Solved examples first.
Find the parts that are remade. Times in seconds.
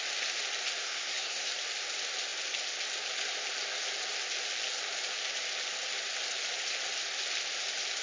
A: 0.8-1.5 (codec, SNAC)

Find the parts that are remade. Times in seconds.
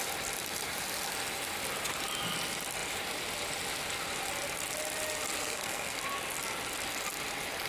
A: 5.4-6.0 (codec, SNAC)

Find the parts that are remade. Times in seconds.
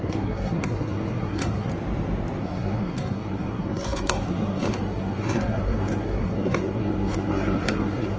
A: 0.0-1.7 (codec, SNAC); 2.4-8.2